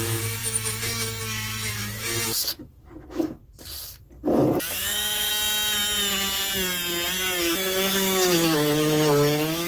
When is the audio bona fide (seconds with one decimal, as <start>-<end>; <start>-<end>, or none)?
3.4-4.7; 5.3-7.4

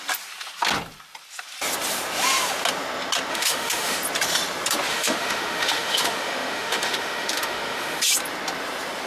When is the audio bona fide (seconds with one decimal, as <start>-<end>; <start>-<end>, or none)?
0.0-3.3; 4.0-4.9; 8.0-9.1

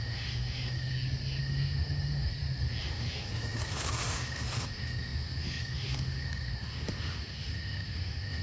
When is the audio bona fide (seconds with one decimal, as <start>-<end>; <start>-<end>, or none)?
0.9-1.4; 2.3-2.8

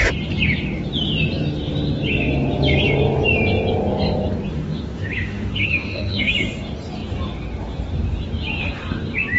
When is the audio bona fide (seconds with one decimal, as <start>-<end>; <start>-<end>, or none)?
0.0-4.5; 6.3-9.4

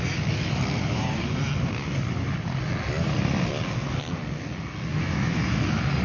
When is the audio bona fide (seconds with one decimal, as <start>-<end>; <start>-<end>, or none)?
0.0-4.9; 5.6-6.0

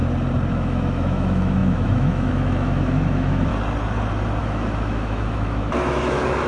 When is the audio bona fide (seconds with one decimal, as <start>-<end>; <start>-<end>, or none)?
0.0-0.5; 3.5-4.4

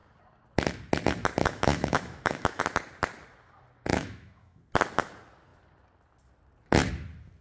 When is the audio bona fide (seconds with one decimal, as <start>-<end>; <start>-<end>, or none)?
0.0-1.4; 2.6-3.9; 4.6-7.4